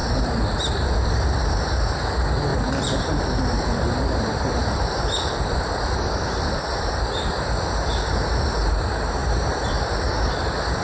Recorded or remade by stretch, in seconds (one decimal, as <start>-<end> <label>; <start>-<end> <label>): 0.0-0.7 recorded; 0.7-10.8 remade